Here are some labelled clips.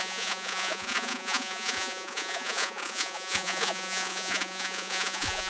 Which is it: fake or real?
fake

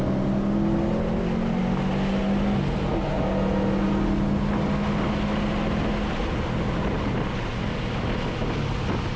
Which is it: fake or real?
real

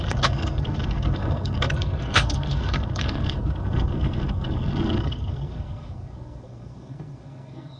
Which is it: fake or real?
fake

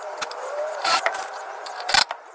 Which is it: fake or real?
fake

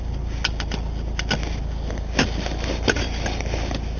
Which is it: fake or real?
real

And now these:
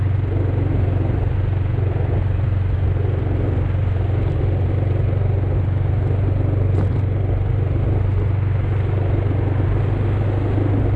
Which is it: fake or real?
real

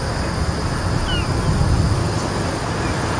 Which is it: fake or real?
real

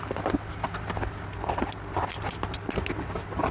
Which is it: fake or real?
real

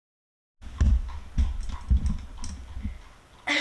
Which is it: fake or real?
real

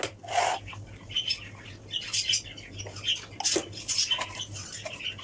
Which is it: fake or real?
real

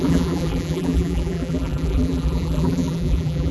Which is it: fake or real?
fake